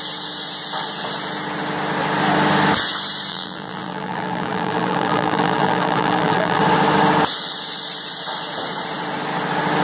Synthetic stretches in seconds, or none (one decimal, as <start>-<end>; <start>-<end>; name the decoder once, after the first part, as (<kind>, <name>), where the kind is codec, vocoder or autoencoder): 3.3-6.6 (vocoder, BigVGAN v2)

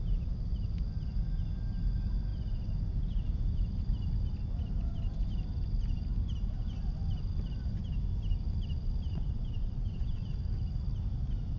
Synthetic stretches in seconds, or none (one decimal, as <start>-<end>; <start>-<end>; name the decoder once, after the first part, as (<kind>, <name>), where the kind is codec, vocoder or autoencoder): 9.1-10.2 (vocoder, WaveNeXt)